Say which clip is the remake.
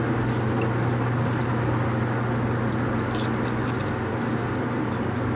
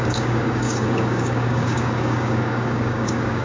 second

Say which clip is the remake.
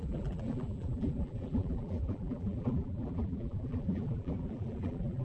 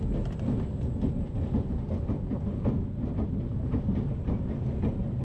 first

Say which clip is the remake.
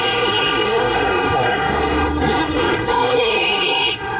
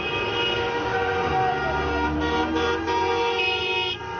first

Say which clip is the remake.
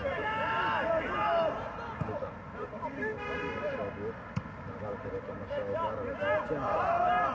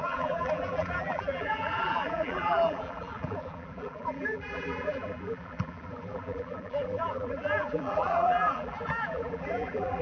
second